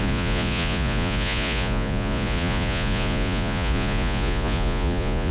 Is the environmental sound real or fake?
fake